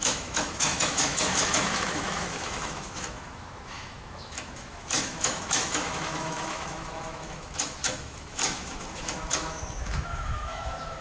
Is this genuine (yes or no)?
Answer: no